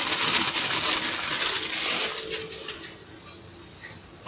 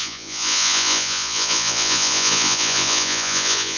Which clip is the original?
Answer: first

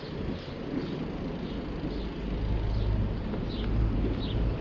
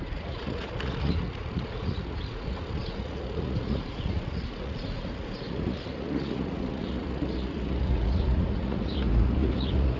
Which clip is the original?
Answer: first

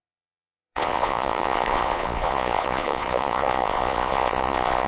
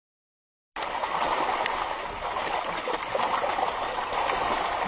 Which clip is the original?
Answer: second